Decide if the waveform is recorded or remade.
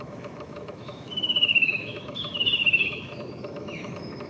remade